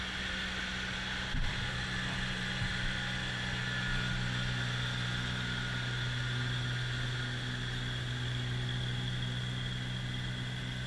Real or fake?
real